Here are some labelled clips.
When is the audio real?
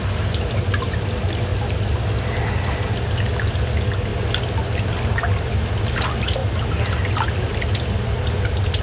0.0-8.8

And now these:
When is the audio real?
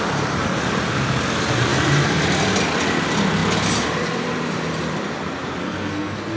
0.0-5.6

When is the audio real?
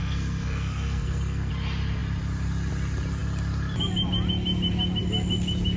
1.5-5.8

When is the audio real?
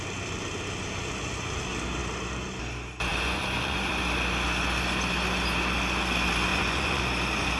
0.0-3.1; 3.9-6.5; 7.0-7.6